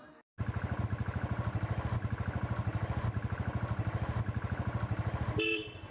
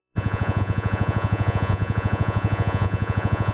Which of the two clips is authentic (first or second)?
first